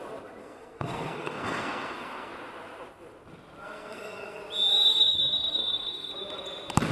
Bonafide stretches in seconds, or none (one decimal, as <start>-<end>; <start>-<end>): 0.0-0.4; 2.3-3.6; 4.4-4.9; 6.1-6.9